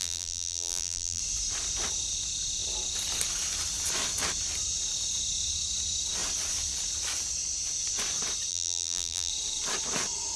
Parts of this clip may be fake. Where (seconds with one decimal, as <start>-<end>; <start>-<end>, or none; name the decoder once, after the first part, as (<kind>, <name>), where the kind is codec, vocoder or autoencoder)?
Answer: 0.0-1.2 (vocoder, BigVGAN v2); 8.5-9.3